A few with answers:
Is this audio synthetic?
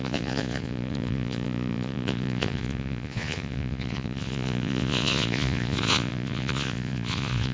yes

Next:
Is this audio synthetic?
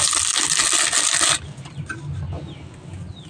no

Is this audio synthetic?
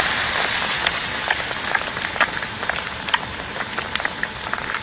no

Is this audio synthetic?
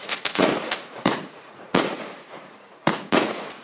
yes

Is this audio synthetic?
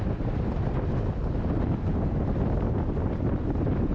no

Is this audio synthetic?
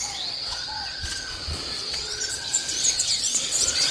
yes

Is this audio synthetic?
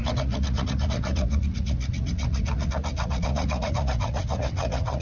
yes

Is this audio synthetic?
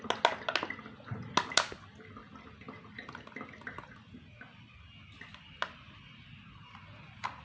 no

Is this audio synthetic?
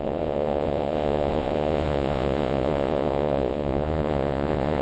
yes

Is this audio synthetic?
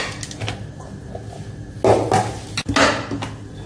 no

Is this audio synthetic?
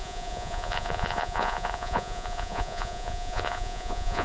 yes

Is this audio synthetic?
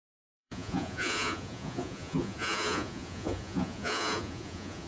yes